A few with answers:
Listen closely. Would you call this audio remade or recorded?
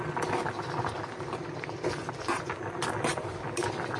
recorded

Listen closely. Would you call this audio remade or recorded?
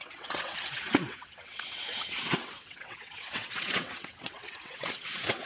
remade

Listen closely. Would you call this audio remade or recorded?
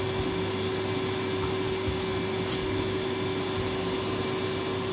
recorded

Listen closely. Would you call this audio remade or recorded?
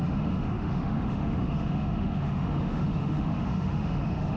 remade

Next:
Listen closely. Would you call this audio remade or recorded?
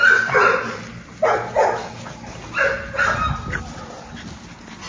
recorded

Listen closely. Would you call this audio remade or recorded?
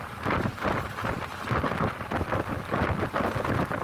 recorded